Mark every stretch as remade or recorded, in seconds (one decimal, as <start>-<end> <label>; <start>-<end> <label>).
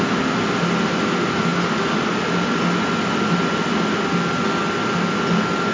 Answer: 0.0-5.7 recorded